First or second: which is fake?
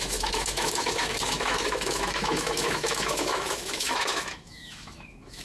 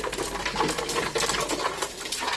first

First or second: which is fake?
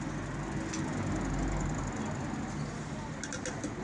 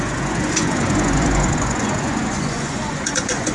second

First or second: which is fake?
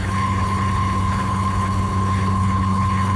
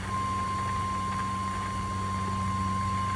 first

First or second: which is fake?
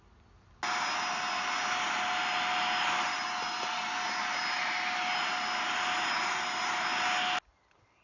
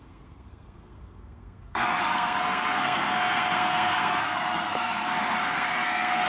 second